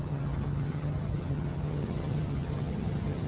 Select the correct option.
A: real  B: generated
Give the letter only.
B